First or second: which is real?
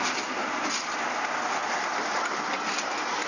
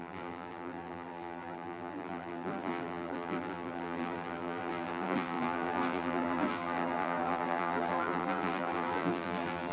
first